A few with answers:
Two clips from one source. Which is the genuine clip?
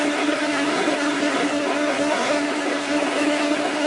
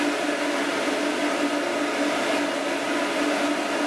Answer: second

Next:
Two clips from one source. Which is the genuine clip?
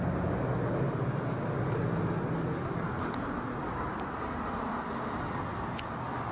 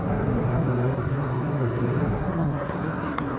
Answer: first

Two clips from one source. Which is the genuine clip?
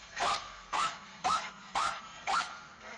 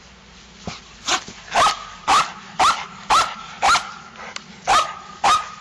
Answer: second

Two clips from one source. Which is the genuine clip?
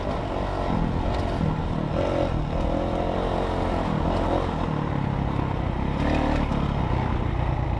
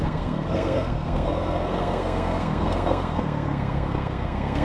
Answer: first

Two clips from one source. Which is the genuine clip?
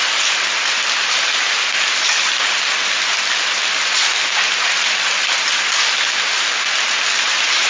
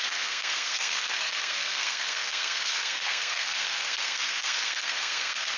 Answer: first